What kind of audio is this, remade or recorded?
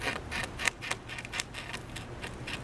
recorded